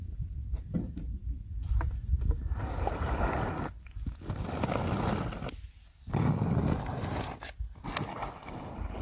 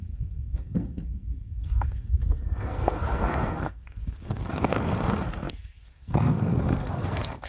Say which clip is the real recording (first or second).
first